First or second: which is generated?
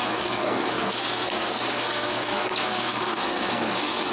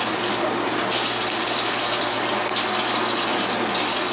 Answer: first